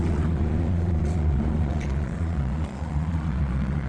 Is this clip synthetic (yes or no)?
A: yes